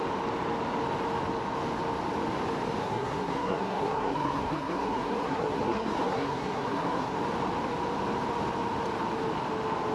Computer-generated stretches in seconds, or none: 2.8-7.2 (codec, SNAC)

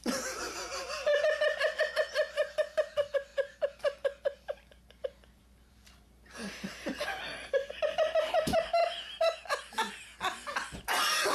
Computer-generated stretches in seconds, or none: 0.0-1.1 (vocoder, BigVGAN v2); 1.8-8.8

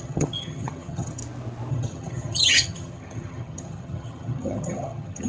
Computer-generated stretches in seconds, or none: 0.0-1.2 (vocoder, HiFi-GAN); 1.7-5.3